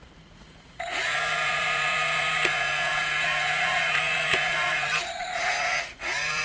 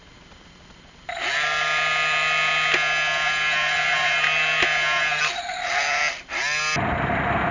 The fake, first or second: first